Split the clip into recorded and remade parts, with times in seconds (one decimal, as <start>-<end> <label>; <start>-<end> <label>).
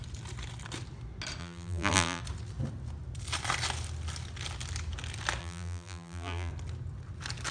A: 0.0-1.4 recorded; 1.4-2.2 remade; 2.2-5.4 recorded; 5.4-6.5 remade; 6.5-7.5 recorded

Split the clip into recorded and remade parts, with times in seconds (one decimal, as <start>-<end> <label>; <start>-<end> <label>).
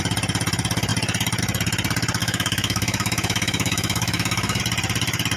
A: 0.0-2.2 recorded; 2.2-4.6 remade; 4.6-5.4 recorded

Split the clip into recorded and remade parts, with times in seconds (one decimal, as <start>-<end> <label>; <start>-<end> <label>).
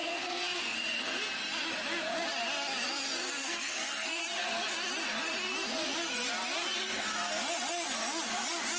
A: 0.0-1.2 remade; 1.2-3.4 recorded; 3.4-4.2 remade; 4.2-8.8 recorded